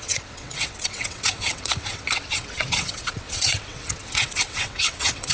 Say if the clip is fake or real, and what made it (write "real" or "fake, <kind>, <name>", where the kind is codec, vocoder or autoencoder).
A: fake, vocoder, WaveNeXt